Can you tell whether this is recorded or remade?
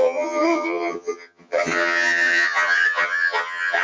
remade